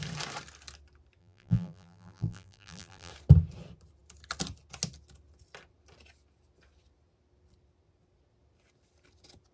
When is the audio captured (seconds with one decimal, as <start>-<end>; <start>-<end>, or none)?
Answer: 0.0-1.2; 3.1-9.5